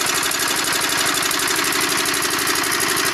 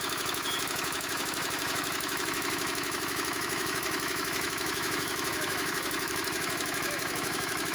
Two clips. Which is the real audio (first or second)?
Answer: first